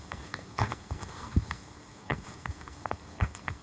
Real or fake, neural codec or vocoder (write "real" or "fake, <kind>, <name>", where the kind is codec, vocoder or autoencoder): fake, codec, SNAC